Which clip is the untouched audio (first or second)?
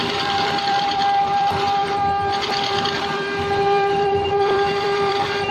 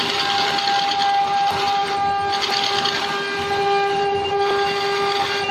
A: second